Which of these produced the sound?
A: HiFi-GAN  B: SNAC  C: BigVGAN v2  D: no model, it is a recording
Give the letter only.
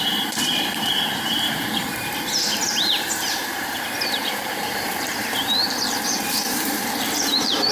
C